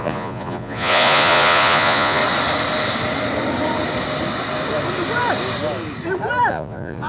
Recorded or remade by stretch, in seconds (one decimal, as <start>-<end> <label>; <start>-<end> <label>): 0.0-2.2 remade; 2.2-6.5 recorded; 6.5-7.1 remade